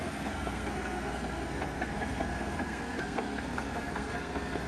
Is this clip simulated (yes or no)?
yes